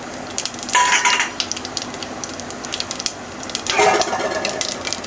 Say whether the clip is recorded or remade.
recorded